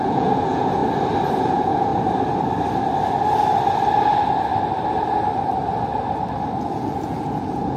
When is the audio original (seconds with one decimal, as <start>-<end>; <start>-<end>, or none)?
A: 0.8-1.4; 1.9-6.6